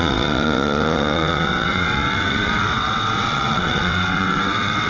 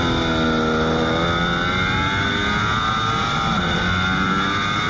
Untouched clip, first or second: second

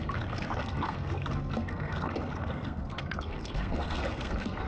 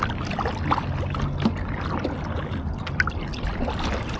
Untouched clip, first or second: second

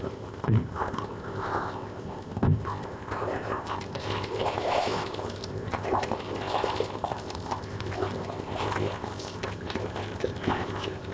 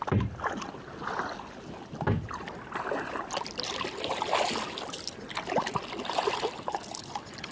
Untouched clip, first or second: second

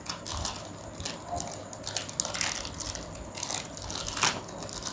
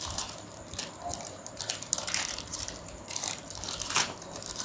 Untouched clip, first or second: first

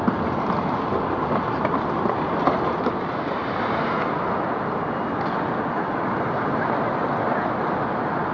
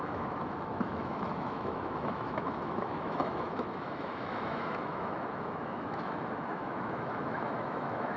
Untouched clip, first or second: first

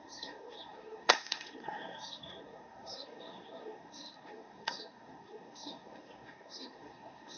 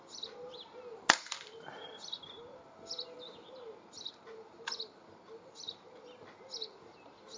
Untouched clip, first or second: second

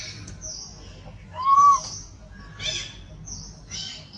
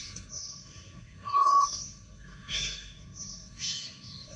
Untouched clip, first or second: first